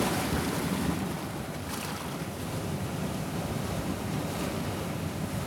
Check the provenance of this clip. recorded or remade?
remade